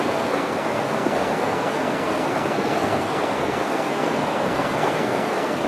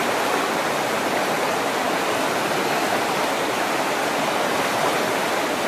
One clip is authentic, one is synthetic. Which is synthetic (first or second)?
first